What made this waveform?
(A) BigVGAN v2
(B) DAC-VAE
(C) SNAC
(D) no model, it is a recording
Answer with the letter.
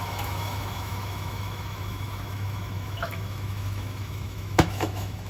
B